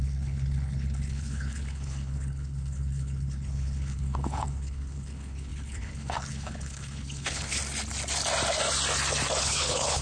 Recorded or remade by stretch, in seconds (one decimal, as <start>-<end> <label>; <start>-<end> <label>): 0.0-7.6 remade; 7.6-9.4 recorded; 9.4-10.0 remade